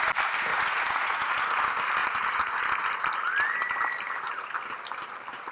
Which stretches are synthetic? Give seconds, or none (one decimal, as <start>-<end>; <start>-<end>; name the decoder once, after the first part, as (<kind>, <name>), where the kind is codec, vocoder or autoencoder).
0.5-1.4 (vocoder, Vocos); 2.0-2.6